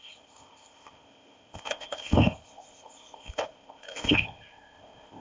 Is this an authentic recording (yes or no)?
no